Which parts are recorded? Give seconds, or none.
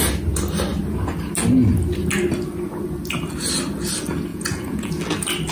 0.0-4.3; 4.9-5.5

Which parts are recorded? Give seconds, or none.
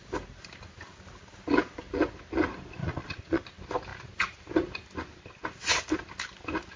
0.0-2.8; 3.4-6.8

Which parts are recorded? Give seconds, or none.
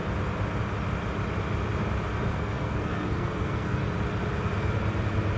0.0-2.3; 3.8-5.4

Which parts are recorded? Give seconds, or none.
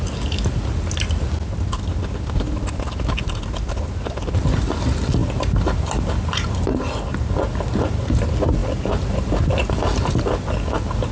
0.0-11.1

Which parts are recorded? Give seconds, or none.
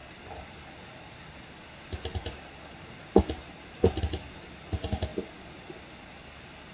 0.0-6.7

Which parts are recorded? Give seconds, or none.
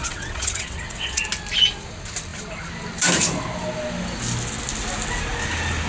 1.2-5.9